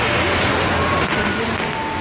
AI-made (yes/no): no